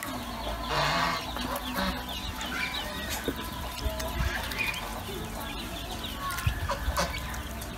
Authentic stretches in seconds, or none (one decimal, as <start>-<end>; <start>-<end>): 0.0-7.8